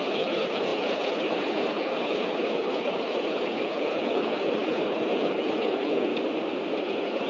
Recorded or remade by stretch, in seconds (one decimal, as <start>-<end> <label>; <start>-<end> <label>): 0.0-6.1 remade; 6.1-6.8 recorded; 6.8-7.3 remade